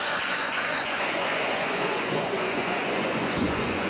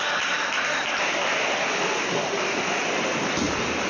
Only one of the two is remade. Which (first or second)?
first